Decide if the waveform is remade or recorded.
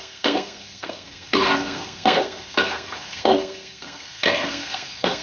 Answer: remade